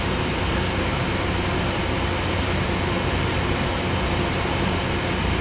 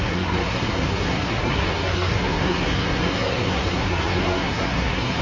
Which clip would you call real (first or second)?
first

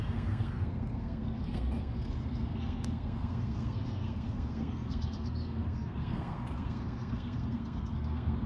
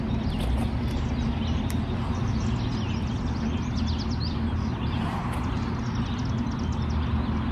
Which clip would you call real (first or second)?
second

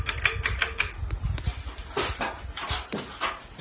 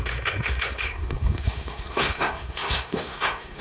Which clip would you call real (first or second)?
first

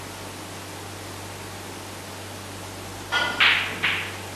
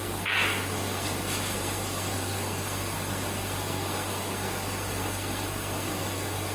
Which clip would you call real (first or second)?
first